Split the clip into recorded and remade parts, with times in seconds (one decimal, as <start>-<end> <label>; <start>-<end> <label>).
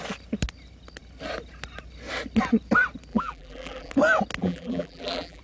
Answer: 0.0-3.1 recorded; 3.1-3.9 remade; 3.9-4.4 recorded; 4.4-5.4 remade